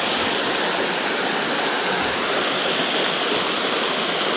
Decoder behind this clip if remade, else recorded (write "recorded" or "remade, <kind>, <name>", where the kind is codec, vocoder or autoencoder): recorded